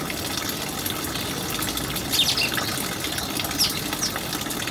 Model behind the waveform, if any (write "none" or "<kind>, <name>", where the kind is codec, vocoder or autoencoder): none